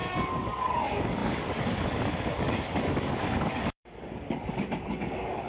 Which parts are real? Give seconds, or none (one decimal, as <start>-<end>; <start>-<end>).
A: none